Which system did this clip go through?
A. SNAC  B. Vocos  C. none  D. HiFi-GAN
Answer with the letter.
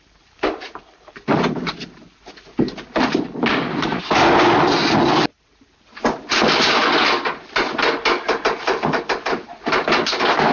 C